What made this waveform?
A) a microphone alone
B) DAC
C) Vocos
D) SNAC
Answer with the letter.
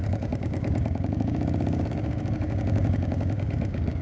B